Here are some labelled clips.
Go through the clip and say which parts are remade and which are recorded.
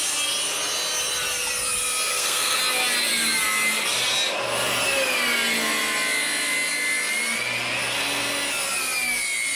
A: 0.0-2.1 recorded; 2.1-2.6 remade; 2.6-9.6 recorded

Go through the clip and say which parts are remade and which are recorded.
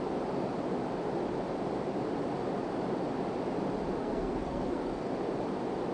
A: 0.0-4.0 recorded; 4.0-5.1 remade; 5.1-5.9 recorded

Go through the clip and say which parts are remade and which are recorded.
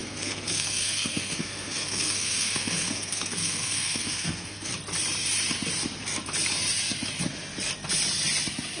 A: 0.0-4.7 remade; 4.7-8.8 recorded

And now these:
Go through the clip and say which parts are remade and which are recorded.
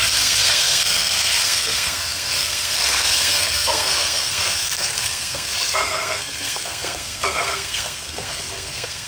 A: 0.0-9.1 remade